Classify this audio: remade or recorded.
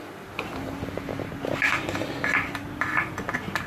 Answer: recorded